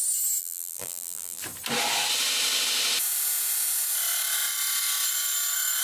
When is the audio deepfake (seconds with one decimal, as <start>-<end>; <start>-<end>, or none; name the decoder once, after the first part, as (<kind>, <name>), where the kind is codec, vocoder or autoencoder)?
0.4-1.4 (vocoder, BigVGAN v2)